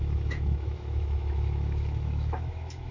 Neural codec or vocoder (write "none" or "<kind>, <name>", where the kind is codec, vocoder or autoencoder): autoencoder, DAC-VAE